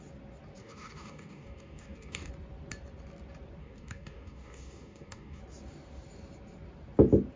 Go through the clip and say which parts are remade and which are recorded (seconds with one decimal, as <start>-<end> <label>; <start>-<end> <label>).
0.0-0.6 recorded; 0.6-2.3 remade; 2.3-3.6 recorded; 3.6-5.4 remade; 5.4-7.4 recorded